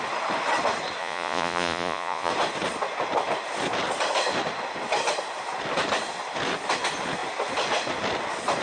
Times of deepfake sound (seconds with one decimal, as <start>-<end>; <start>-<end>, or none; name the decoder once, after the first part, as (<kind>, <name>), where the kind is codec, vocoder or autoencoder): 1.0-2.3 (vocoder, Vocos)